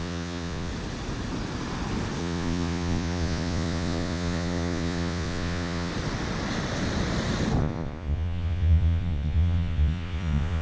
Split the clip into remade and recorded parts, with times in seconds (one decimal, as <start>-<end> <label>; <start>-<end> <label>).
0.0-0.7 remade; 0.7-2.2 recorded; 2.2-5.9 remade; 5.9-7.6 recorded; 7.6-10.6 remade